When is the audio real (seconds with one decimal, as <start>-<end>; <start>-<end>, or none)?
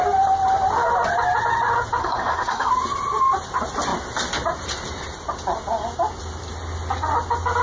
0.0-2.0; 2.7-7.6